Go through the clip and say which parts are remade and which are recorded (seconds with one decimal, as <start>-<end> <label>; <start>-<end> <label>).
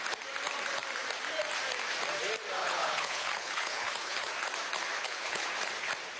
0.0-2.6 recorded; 2.6-4.3 remade; 4.3-5.0 recorded; 5.0-5.5 remade; 5.5-6.2 recorded